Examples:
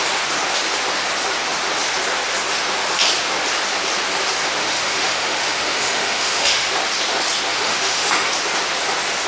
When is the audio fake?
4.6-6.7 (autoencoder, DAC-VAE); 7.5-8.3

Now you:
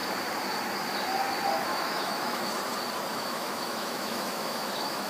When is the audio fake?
1.7-2.5 (autoencoder, DAC-VAE); 3.1-5.1

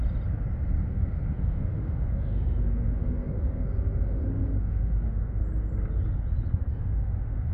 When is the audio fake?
0.9-5.4 (autoencoder, DAC-VAE); 6.7-7.5

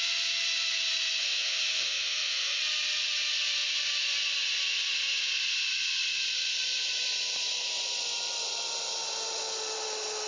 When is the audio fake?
1.2-2.6 (autoencoder, DAC-VAE)

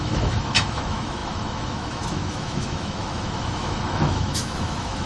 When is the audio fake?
0.0-5.1 (autoencoder, DAC-VAE)

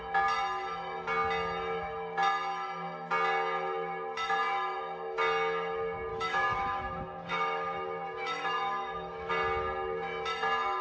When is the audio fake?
6.1-9.3 (autoencoder, DAC-VAE)